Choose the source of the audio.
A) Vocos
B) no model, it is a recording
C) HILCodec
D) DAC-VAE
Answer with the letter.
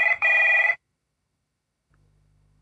D